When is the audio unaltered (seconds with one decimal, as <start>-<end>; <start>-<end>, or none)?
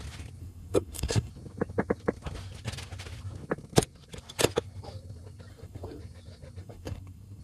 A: 0.0-0.4; 1.3-5.5; 6.0-6.6